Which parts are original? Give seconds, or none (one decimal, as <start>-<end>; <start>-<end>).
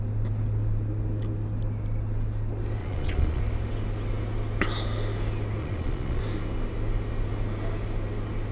0.0-2.8; 3.4-5.6; 6.2-8.5